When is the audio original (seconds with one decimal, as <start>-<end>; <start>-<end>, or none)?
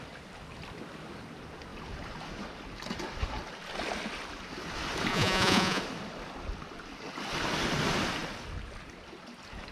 0.0-5.1; 5.8-9.7